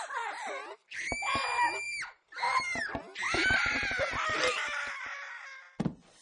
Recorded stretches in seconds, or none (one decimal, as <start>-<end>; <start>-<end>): 0.0-6.2